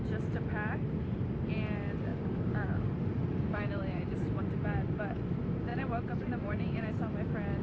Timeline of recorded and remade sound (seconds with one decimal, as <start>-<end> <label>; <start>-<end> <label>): 0.0-2.1 recorded; 2.1-4.4 remade; 4.4-5.7 recorded; 5.7-6.9 remade; 6.9-7.6 recorded